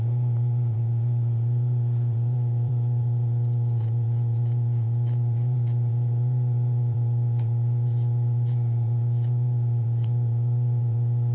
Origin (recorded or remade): remade